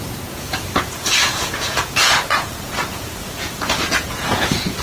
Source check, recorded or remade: remade